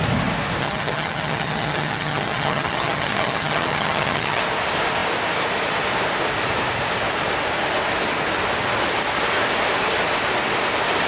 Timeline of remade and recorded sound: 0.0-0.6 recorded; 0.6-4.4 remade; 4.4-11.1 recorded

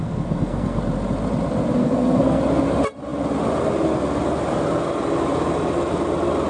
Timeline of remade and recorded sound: 0.0-0.8 remade; 0.8-1.8 recorded; 1.8-2.4 remade; 2.4-6.5 recorded

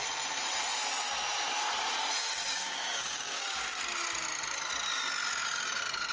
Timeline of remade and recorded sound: 0.0-2.2 recorded; 2.2-3.8 remade; 3.8-6.1 recorded

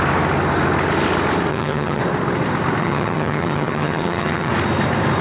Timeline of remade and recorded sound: 0.0-1.5 recorded; 1.5-2.0 remade; 2.0-2.8 recorded; 2.8-4.5 remade; 4.5-5.2 recorded

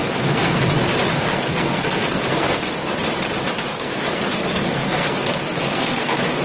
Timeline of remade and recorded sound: 0.0-0.6 remade; 0.6-1.1 recorded; 1.1-2.6 remade; 2.6-3.7 recorded; 3.7-6.4 remade

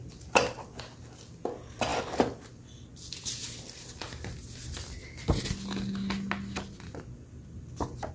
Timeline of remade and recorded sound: 0.0-8.1 recorded